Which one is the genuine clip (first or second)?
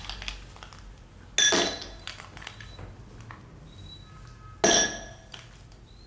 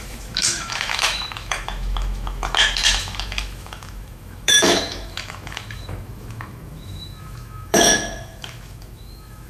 first